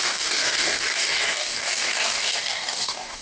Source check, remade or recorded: remade